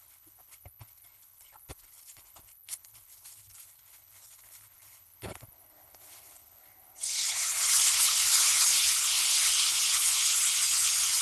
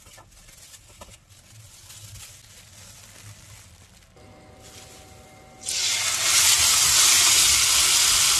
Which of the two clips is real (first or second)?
second